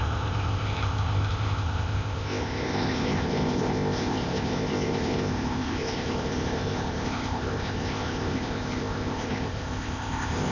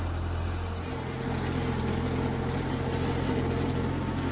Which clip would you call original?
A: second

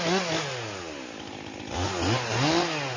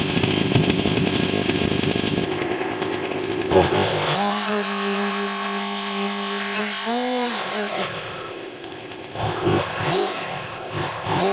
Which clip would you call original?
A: first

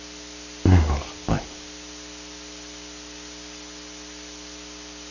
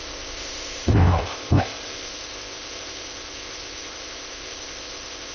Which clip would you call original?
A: first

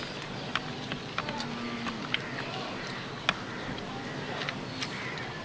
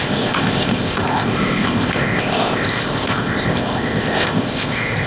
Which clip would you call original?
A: first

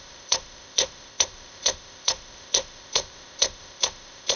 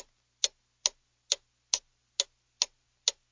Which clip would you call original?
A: second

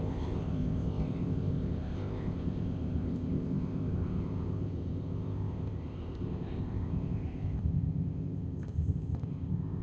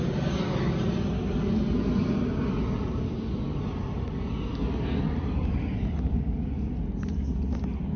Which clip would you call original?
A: second